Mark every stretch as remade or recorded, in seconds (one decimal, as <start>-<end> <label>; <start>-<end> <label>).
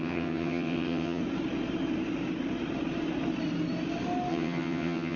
0.0-1.2 remade; 1.2-4.3 recorded; 4.3-5.2 remade